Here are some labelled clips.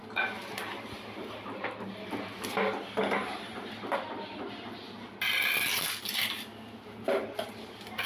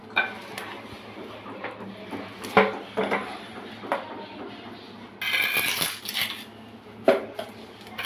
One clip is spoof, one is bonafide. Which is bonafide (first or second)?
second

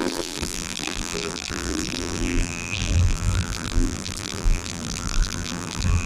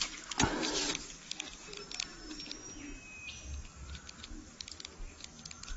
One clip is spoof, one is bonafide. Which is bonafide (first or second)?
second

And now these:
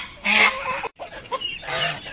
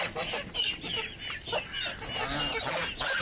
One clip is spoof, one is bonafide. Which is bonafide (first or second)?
second